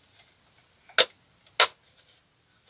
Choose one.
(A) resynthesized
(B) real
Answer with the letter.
B